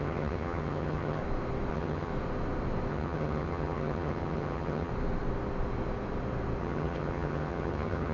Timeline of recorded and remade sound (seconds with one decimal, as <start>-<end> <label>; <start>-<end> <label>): 0.0-1.2 remade; 1.2-1.7 recorded; 1.7-2.1 remade; 2.1-2.9 recorded; 2.9-4.9 remade; 4.9-6.6 recorded; 6.6-8.1 remade